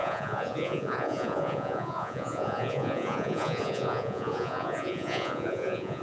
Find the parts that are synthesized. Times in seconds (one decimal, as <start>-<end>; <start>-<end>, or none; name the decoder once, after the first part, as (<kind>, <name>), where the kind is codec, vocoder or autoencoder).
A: 0.0-6.0 (vocoder, Vocos)